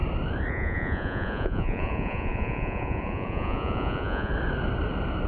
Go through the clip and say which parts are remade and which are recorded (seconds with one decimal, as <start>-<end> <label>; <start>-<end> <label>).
0.0-0.5 recorded; 0.5-4.3 remade; 4.3-5.3 recorded